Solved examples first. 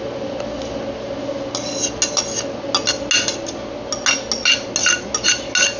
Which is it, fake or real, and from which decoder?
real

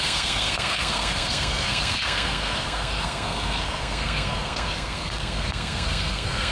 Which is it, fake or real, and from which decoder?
fake, codec, SNAC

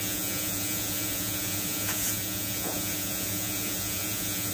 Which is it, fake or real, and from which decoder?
fake, vocoder, Vocos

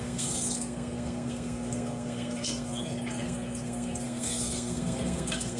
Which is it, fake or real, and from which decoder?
fake, codec, SNAC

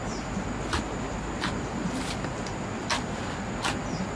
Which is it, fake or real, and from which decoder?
real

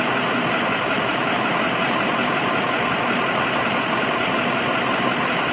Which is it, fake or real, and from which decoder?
real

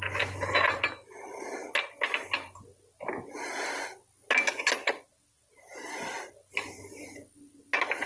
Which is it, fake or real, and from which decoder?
real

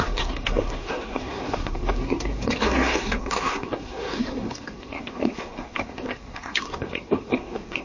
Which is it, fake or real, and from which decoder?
fake, codec, SNAC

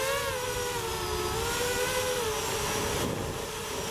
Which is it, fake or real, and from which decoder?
real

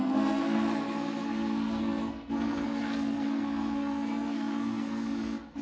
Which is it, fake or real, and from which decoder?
fake, codec, SNAC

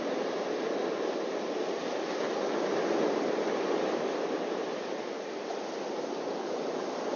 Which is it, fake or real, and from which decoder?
real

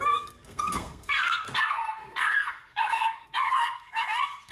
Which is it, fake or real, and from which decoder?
fake, codec, SNAC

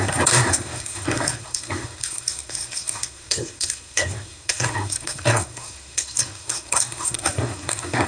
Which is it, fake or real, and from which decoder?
fake, codec, SNAC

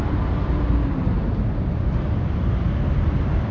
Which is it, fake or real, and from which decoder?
real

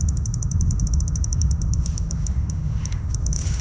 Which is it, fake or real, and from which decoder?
fake, autoencoder, DAC-VAE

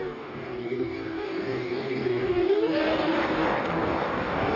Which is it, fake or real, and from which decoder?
fake, codec, DAC